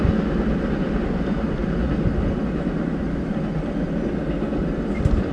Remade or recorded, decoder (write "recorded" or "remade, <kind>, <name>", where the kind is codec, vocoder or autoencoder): recorded